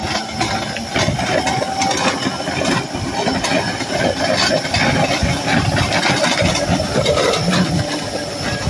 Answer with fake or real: real